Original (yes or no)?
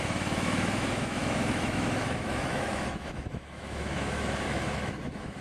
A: no